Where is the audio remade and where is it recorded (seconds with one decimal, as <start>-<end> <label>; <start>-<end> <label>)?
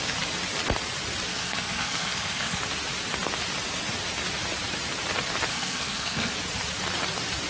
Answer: 0.0-1.3 recorded; 1.3-2.6 remade; 2.6-5.5 recorded; 5.5-6.3 remade; 6.3-7.5 recorded